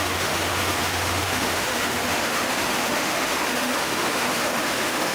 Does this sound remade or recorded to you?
remade